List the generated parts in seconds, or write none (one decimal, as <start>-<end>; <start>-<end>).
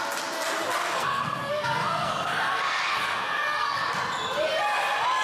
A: 0.8-3.9